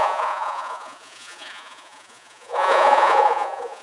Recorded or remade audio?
remade